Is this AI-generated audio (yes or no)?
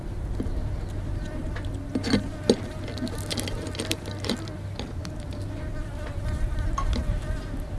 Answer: no